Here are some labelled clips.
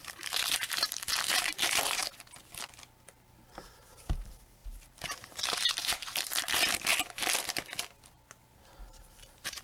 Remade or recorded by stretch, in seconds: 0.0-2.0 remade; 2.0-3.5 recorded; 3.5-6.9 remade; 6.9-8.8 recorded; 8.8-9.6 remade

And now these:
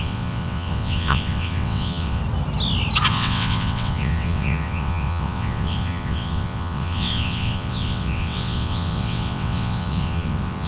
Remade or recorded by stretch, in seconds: 0.0-2.2 remade; 2.2-3.1 recorded; 3.1-10.7 remade

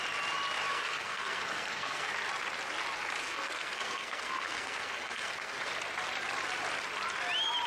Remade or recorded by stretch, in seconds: 0.0-0.7 recorded; 0.7-2.1 remade; 2.1-3.2 recorded; 3.2-5.7 remade; 5.7-7.7 recorded

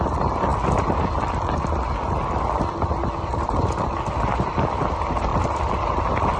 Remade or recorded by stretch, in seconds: 0.0-3.6 recorded; 3.6-4.3 remade; 4.3-5.3 recorded; 5.3-6.0 remade; 6.0-6.4 recorded

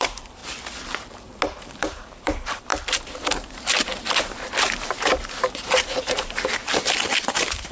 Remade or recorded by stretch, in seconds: 0.0-0.4 remade; 0.4-1.6 recorded; 1.6-2.7 remade; 2.7-4.6 recorded; 4.6-6.6 remade; 6.6-7.2 recorded; 7.2-7.7 remade

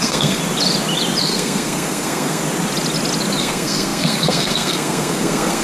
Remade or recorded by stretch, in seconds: 0.0-0.4 remade; 0.4-1.2 recorded; 1.2-2.4 remade; 2.4-3.4 recorded; 3.4-5.6 remade

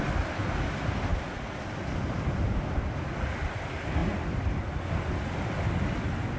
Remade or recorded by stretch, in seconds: 0.0-6.4 recorded